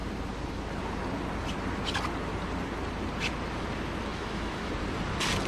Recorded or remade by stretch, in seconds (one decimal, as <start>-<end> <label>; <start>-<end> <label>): 0.0-4.1 recorded; 4.1-4.7 remade; 4.7-5.5 recorded